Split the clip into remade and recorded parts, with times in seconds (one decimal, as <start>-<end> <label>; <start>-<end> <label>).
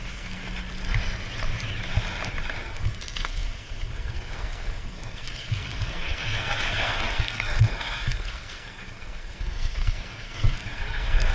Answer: 0.0-0.4 remade; 0.4-2.6 recorded; 2.6-11.3 remade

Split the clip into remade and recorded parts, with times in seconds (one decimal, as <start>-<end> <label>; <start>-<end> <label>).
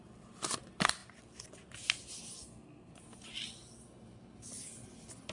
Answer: 0.0-2.4 recorded; 2.4-2.9 remade; 2.9-5.3 recorded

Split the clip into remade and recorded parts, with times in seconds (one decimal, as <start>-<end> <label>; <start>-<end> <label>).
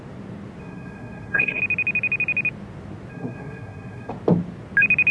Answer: 0.0-0.6 recorded; 0.6-1.6 remade; 1.6-3.1 recorded; 3.1-4.1 remade; 4.1-5.1 recorded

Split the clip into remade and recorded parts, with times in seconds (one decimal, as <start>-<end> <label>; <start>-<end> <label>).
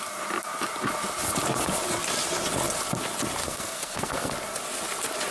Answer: 0.0-3.4 recorded; 3.4-4.3 remade; 4.3-5.3 recorded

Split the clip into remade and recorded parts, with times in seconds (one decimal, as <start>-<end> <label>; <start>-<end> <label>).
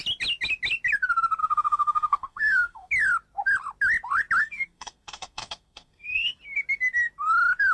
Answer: 0.0-1.4 recorded; 1.4-2.9 remade; 2.9-4.4 recorded; 4.4-6.4 remade; 6.4-7.7 recorded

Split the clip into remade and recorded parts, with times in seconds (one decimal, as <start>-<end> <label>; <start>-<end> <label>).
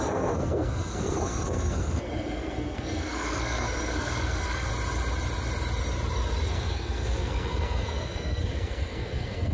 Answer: 0.0-4.7 remade; 4.7-6.5 recorded; 6.5-9.5 remade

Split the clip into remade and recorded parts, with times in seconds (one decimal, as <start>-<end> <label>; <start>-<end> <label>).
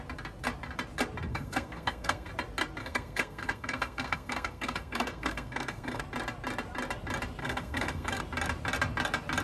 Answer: 0.0-1.3 recorded; 1.3-2.3 remade; 2.3-2.8 recorded; 2.8-6.0 remade; 6.0-7.4 recorded; 7.4-8.2 remade; 8.2-9.4 recorded